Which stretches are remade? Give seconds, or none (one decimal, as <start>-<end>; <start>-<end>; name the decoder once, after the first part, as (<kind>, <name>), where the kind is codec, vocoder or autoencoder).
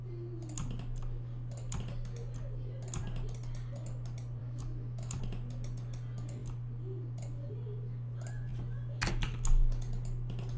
4.4-5.2 (autoencoder, DAC-VAE)